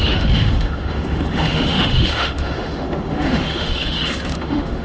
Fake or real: fake